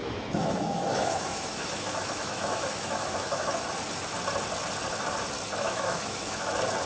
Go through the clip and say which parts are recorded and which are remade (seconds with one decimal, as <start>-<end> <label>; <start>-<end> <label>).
0.0-3.6 remade; 3.6-5.6 recorded; 5.6-6.5 remade; 6.5-6.9 recorded